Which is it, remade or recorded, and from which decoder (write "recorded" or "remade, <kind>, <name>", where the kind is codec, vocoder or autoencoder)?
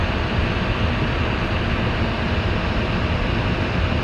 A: recorded